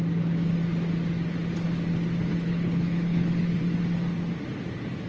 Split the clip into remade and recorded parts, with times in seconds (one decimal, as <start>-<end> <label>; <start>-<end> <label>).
0.0-2.3 recorded; 2.3-3.6 remade; 3.6-5.1 recorded